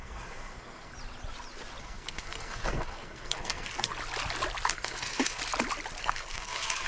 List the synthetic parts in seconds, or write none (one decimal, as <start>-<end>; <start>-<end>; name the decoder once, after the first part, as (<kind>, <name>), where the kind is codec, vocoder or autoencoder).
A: 0.0-0.9 (codec, SNAC); 1.8-3.9; 4.7-5.4; 6.0-6.9